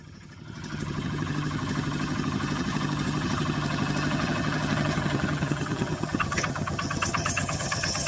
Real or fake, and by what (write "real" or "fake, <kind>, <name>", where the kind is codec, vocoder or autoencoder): fake, vocoder, HiFi-GAN